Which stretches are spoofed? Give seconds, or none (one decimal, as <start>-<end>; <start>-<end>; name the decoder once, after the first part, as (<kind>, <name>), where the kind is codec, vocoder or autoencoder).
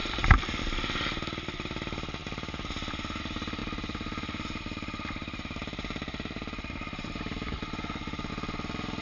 0.0-0.6 (vocoder, BigVGAN v2); 3.6-8.3